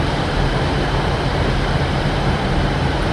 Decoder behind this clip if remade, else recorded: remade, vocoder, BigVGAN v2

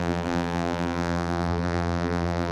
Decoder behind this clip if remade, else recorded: remade, vocoder, BigVGAN v2